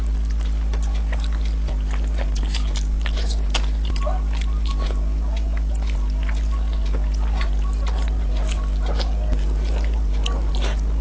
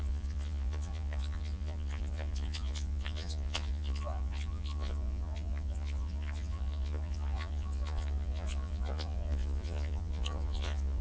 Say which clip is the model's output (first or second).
second